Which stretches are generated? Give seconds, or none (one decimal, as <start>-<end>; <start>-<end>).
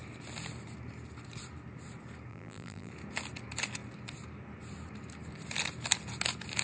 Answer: 2.3-2.9